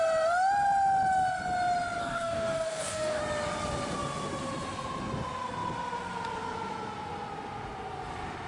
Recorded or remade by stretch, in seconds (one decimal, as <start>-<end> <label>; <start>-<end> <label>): 0.0-2.0 recorded; 2.0-3.2 remade; 3.2-8.5 recorded